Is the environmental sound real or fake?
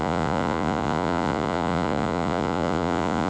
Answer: fake